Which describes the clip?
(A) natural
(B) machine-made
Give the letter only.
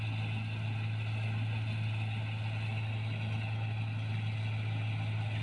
A